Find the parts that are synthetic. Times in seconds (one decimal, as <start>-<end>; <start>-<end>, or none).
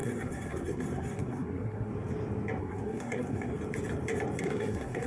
0.0-1.9; 2.6-3.5; 4.4-5.1